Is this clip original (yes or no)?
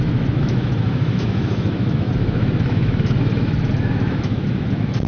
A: no